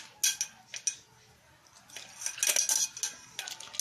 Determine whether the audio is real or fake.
real